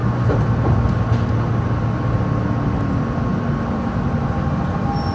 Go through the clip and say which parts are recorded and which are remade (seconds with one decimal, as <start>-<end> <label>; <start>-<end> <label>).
0.0-1.3 remade; 1.3-3.3 recorded; 3.3-4.1 remade; 4.1-5.1 recorded